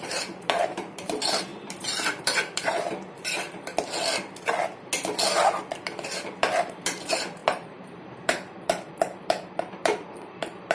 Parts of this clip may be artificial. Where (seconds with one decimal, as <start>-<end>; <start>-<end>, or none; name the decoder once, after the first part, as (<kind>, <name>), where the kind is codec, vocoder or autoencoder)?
0.0-1.5 (vocoder, BigVGAN v2); 2.2-3.7; 6.3-10.7

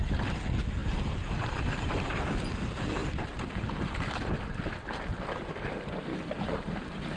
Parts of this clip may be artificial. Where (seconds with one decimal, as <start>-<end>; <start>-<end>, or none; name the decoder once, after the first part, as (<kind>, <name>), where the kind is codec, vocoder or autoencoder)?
0.8-2.3 (vocoder, BigVGAN v2); 3.0-4.1; 6.1-6.6

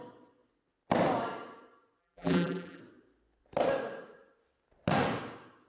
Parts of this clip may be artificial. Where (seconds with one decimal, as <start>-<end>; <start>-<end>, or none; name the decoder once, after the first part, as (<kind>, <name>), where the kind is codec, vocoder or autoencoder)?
2.0-2.8 (vocoder, BigVGAN v2)

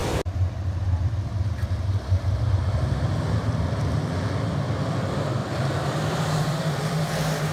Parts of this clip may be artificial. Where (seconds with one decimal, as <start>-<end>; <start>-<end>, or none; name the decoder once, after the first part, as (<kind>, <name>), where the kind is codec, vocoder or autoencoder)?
0.0-3.6 (vocoder, BigVGAN v2); 5.4-7.5

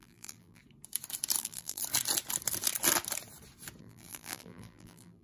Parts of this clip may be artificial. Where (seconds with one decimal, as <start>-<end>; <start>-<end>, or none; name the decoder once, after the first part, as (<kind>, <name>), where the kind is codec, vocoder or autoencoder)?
0.0-0.6 (vocoder, BigVGAN v2); 1.4-1.8; 3.8-5.2